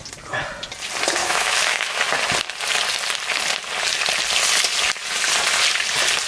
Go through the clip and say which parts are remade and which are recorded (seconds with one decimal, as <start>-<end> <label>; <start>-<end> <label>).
0.0-1.2 recorded; 1.2-2.0 remade; 2.0-6.3 recorded